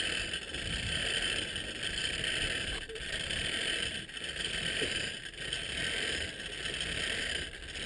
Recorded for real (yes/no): yes